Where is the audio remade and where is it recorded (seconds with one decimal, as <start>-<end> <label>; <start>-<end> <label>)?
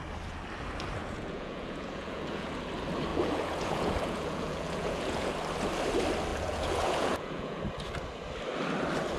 0.0-1.0 recorded; 1.0-2.5 remade; 2.5-3.1 recorded; 3.1-5.3 remade; 5.3-6.3 recorded; 6.3-7.6 remade; 7.6-9.2 recorded